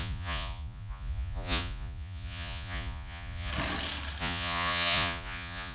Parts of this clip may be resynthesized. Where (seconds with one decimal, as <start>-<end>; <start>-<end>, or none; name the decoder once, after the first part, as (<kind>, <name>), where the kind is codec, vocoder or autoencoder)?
0.0-3.5 (vocoder, Vocos); 4.2-5.7